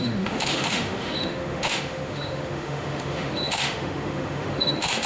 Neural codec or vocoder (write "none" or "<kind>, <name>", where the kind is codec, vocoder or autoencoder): autoencoder, DAC-VAE